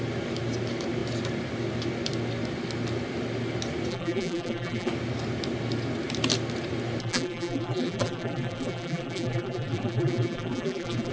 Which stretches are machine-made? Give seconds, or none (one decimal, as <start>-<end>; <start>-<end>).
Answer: 3.9-4.9; 7.0-11.1